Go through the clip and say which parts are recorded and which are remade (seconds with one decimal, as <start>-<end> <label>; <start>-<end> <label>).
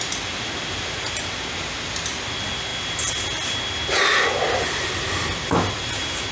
0.0-6.3 recorded